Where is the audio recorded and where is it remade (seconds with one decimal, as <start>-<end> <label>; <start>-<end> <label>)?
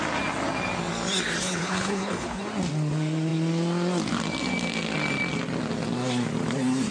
0.0-1.4 recorded; 1.4-2.4 remade; 2.4-6.9 recorded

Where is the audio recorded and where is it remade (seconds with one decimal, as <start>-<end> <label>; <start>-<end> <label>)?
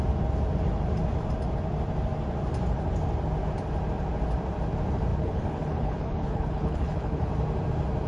0.0-5.1 recorded; 5.1-7.3 remade; 7.3-8.1 recorded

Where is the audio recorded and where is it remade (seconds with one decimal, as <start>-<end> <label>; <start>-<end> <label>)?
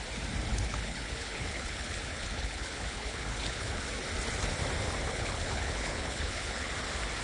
0.0-0.5 recorded; 0.5-3.8 remade; 3.8-5.1 recorded; 5.1-6.7 remade; 6.7-7.2 recorded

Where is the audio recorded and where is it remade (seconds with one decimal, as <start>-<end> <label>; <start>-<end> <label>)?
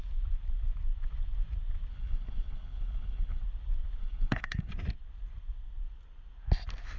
0.0-1.9 recorded; 1.9-3.4 remade; 3.4-4.0 recorded; 4.0-4.7 remade; 4.7-7.0 recorded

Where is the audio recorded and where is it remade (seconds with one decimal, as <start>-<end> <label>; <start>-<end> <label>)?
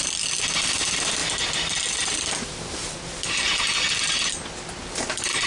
0.0-5.5 recorded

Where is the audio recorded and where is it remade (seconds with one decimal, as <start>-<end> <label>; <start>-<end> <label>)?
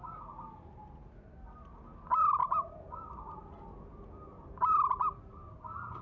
0.0-6.0 recorded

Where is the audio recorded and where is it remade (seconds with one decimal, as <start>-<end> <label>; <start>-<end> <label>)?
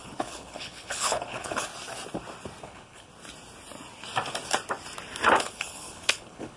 0.0-1.7 remade; 1.7-2.6 recorded; 2.6-3.1 remade; 3.1-5.4 recorded; 5.4-6.6 remade